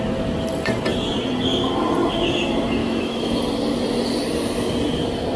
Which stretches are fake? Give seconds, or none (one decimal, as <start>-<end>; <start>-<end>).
2.8-3.4